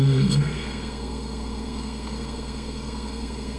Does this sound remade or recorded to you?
remade